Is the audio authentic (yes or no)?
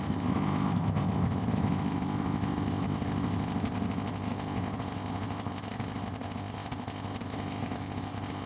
no